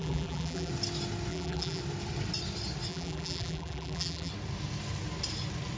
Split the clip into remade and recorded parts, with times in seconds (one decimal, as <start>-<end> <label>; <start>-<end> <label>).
0.0-0.7 remade; 0.7-1.3 recorded; 1.3-1.8 remade; 1.8-2.9 recorded; 2.9-4.3 remade; 4.3-5.8 recorded